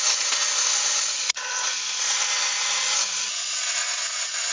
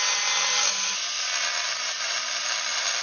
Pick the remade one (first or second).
first